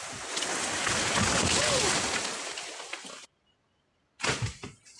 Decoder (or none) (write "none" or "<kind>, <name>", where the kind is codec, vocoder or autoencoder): none